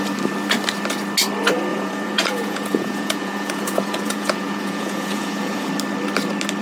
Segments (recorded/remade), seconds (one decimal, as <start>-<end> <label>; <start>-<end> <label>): 0.0-1.7 recorded; 1.7-5.7 remade; 5.7-6.6 recorded